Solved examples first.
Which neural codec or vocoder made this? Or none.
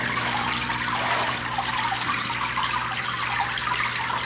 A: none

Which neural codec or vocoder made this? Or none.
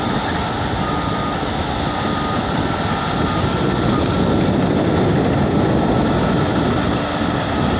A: none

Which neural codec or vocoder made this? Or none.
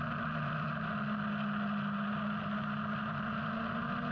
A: none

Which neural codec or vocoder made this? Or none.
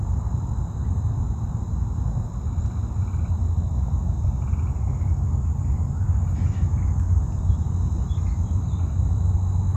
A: none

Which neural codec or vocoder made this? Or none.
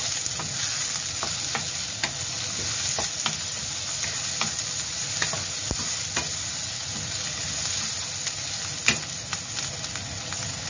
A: none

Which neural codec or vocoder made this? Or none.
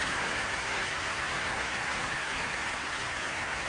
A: codec, SNAC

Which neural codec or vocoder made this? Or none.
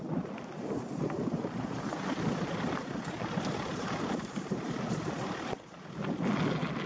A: none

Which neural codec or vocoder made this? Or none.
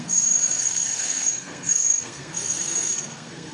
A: codec, SNAC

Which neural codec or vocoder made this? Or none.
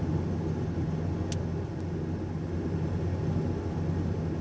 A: none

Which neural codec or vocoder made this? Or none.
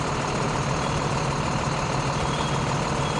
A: none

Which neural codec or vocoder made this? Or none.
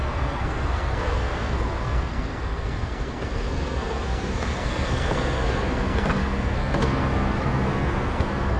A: codec, SNAC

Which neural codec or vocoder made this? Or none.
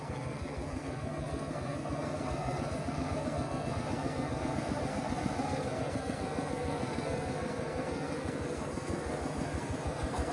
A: codec, SNAC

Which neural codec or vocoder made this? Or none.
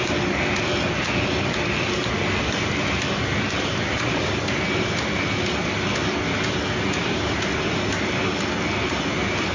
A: none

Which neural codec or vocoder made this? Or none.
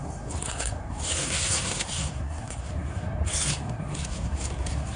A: codec, SNAC